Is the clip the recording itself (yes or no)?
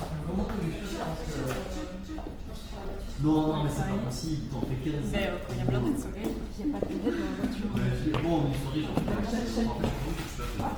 yes